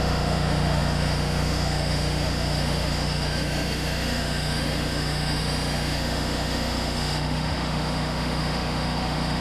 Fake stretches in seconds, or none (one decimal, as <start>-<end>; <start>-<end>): 0.0-9.4